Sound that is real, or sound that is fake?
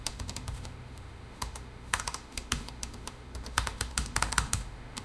fake